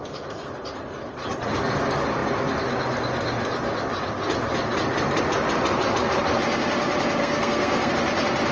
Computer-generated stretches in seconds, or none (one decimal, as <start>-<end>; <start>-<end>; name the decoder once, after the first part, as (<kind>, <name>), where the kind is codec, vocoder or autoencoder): 7.2-7.9 (codec, SNAC)